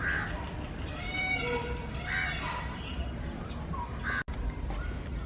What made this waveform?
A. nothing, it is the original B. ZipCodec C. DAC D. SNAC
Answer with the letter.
A